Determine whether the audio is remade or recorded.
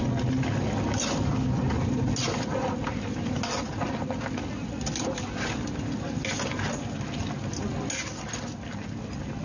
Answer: recorded